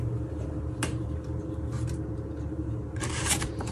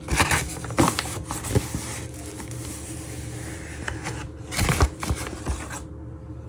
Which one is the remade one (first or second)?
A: first